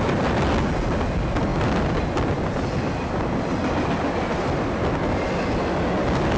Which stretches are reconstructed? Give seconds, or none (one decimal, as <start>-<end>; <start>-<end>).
none

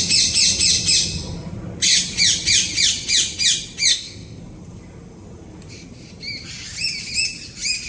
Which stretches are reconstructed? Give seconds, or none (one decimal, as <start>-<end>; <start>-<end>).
3.9-4.4

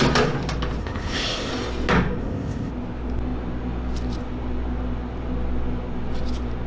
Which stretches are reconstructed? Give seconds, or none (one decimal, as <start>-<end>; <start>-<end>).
0.8-1.5; 2.2-2.7

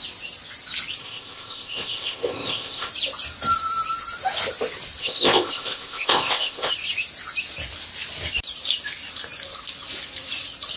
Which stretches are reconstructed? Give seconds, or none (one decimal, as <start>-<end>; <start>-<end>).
1.0-2.9; 5.0-6.7